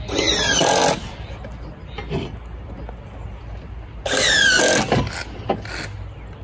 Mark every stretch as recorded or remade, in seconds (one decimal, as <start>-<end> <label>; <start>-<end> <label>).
0.0-6.4 recorded